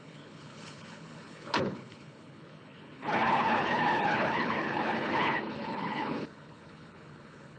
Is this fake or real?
fake